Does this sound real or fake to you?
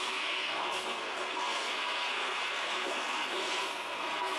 fake